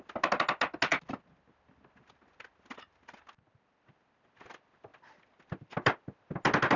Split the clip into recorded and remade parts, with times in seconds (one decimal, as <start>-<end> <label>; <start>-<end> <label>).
0.0-6.8 recorded